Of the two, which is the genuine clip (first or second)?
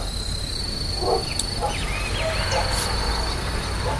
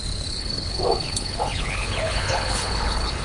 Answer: first